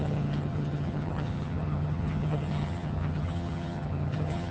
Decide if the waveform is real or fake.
fake